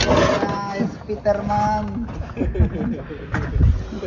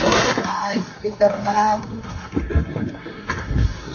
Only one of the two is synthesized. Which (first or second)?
second